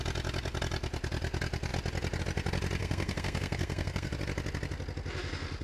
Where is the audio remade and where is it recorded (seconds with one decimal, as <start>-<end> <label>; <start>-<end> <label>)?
0.0-2.8 recorded; 2.8-4.1 remade; 4.1-5.6 recorded